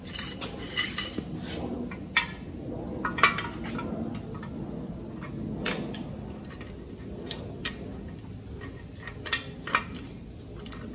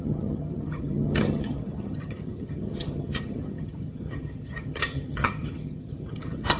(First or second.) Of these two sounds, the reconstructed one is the second